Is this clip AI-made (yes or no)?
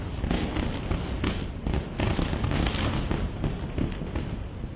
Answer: no